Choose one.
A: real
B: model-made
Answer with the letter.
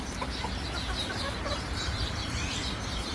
B